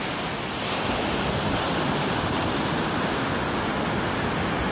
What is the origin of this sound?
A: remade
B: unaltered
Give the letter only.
B